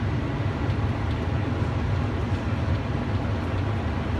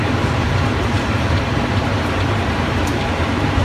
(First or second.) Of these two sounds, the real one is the first